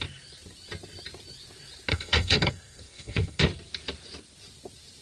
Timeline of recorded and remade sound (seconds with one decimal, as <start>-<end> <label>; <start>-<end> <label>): 0.0-1.9 recorded; 1.9-3.4 remade; 3.4-5.0 recorded